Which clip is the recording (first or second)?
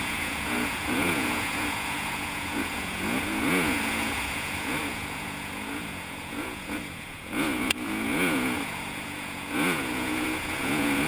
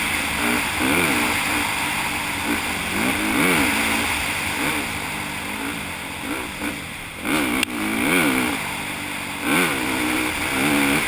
second